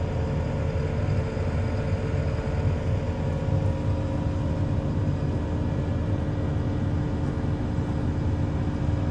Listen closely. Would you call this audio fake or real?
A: real